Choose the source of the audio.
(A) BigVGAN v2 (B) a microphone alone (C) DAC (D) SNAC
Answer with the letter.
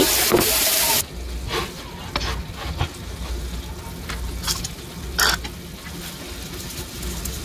B